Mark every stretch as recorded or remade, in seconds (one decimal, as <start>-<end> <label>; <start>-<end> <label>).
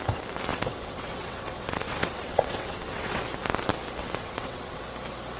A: 0.0-0.5 recorded; 0.5-3.2 remade; 3.2-4.0 recorded; 4.0-4.8 remade; 4.8-5.4 recorded